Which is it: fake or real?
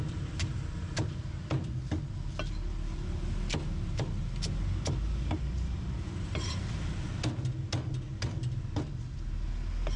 real